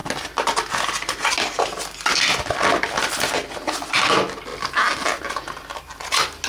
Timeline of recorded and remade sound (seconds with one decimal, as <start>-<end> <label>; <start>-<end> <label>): 0.0-6.5 recorded